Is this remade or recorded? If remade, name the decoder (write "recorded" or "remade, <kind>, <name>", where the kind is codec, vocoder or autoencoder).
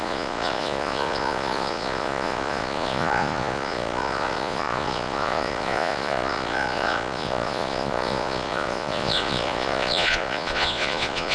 remade, vocoder, Vocos